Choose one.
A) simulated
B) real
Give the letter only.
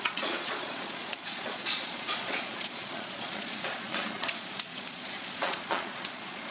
A